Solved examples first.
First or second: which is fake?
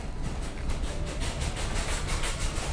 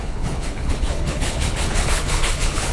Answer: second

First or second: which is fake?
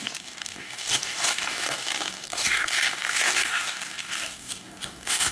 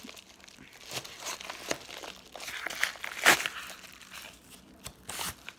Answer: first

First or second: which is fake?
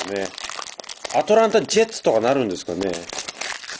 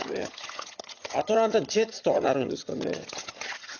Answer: second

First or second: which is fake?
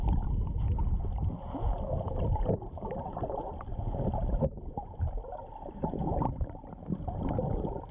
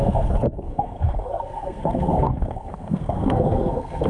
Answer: second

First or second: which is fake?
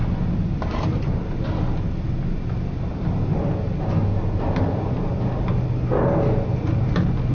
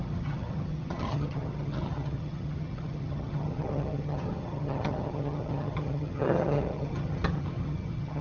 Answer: second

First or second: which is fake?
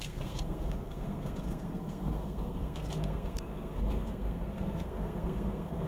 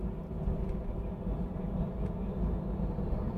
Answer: first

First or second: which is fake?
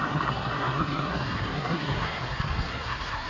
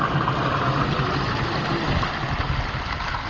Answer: first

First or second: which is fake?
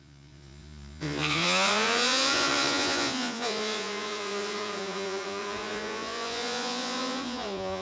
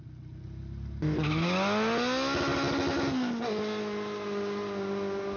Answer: first